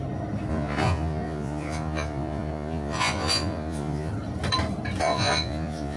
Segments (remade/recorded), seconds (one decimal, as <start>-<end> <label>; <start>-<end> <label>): 0.0-0.5 recorded; 0.5-4.1 remade; 4.1-5.0 recorded; 5.0-6.0 remade